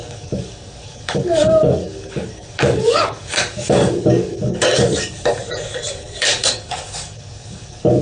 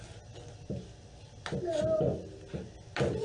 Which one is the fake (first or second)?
first